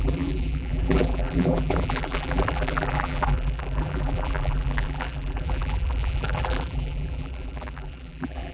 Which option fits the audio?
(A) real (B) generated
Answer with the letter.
B